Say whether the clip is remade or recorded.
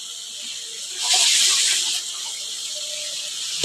recorded